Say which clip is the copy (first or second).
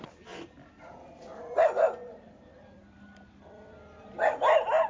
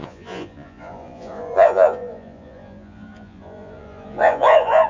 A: second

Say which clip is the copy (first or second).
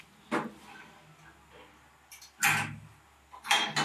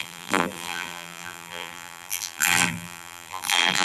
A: second